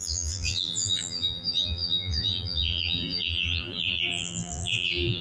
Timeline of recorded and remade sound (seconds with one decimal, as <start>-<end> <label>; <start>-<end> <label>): 0.0-5.2 remade